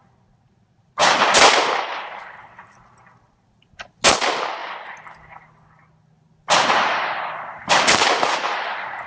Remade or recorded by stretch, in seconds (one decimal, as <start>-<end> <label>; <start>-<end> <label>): 0.0-9.1 recorded